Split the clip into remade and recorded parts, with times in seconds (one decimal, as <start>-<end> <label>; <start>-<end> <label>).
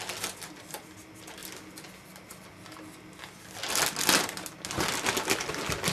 0.0-5.9 recorded